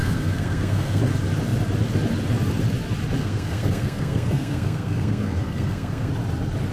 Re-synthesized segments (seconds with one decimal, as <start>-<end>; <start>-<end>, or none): 0.0-1.0; 3.2-6.1